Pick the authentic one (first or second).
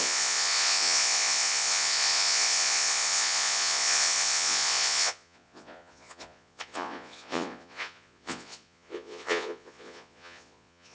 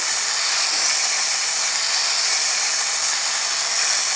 second